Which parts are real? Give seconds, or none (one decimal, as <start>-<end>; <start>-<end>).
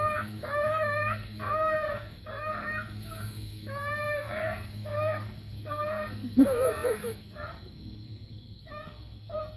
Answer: none